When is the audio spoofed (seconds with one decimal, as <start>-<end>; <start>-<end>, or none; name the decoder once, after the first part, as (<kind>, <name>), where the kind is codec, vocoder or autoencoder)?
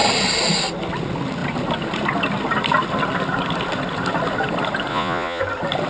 4.9-5.4 (vocoder, Vocos)